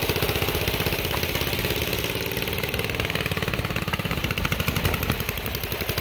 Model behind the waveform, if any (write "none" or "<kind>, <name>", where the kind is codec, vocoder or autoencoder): none